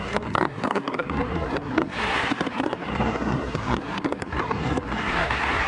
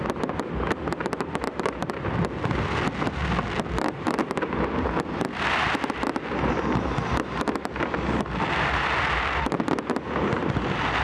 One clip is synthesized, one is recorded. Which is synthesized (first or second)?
first